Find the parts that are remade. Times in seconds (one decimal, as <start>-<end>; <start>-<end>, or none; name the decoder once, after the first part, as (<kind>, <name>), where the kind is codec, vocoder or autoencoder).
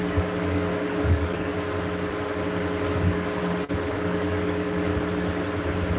0.0-1.5 (codec, DAC); 2.9-3.4; 3.9-4.9